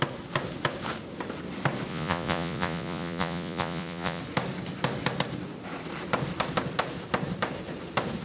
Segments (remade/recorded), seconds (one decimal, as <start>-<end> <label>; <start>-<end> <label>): 0.0-1.9 recorded; 1.9-4.2 remade; 4.2-8.2 recorded